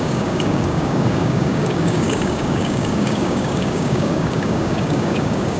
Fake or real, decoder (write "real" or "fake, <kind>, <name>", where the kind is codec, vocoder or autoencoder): fake, codec, DAC